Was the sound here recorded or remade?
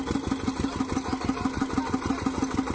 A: recorded